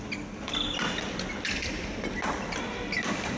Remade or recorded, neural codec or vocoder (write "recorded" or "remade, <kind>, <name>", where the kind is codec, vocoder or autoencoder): recorded